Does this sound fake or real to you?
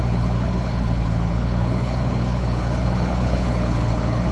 fake